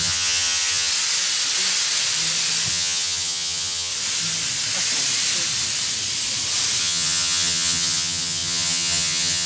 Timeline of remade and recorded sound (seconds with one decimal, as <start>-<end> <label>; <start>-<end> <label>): 0.0-0.9 remade; 0.9-2.7 recorded; 2.7-3.9 remade; 3.9-6.8 recorded; 6.8-9.5 remade